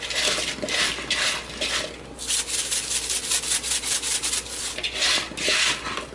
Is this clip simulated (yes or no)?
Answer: no